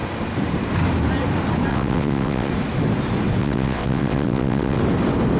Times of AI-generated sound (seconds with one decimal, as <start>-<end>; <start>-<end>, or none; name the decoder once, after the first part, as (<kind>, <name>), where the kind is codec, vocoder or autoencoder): 1.7-2.5 (vocoder, WaveNeXt); 3.4-4.8